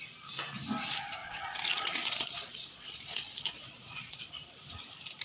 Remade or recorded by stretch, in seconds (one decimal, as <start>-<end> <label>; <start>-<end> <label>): 0.0-1.2 recorded; 1.2-4.3 remade; 4.3-5.2 recorded